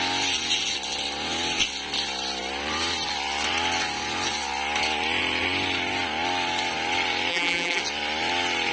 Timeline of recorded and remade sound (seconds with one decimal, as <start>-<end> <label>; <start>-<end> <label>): 0.0-7.3 recorded; 7.3-7.8 remade; 7.8-8.7 recorded